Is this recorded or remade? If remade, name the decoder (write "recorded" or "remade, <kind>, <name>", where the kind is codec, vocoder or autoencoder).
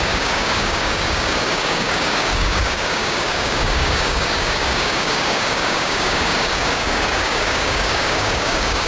remade, codec, DAC